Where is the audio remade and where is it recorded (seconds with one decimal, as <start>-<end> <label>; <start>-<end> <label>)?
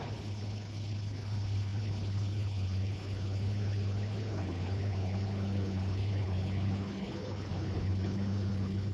0.0-8.9 remade